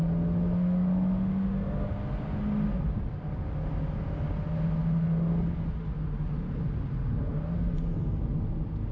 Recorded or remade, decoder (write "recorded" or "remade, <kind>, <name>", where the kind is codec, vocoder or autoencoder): recorded